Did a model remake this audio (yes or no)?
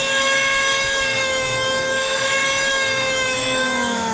yes